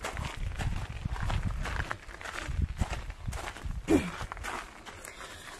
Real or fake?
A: real